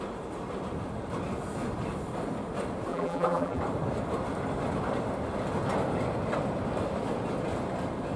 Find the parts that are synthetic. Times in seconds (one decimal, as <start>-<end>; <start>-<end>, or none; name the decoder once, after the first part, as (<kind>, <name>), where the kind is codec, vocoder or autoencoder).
2.9-3.6 (vocoder, BigVGAN v2)